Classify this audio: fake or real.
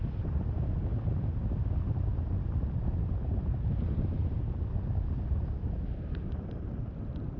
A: real